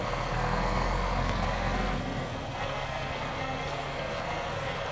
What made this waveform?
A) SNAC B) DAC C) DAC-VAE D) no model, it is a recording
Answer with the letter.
A